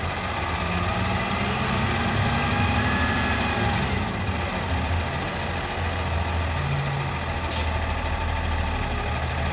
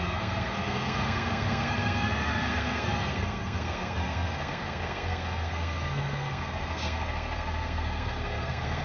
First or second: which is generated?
second